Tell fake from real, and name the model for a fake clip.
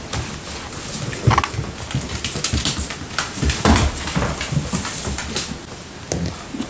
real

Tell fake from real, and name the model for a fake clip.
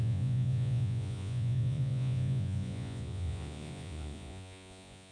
fake, vocoder, Vocos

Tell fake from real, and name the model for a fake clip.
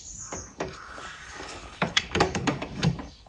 fake, codec, DAC